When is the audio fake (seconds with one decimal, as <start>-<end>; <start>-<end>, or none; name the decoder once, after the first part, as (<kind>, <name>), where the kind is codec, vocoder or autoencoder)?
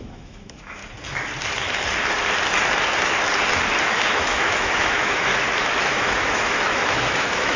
0.0-0.8 (autoencoder, DAC-VAE); 3.8-5.3; 5.8-7.6